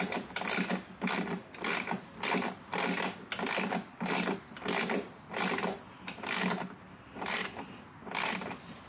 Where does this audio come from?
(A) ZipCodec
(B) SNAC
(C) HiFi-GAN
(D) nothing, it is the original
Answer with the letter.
D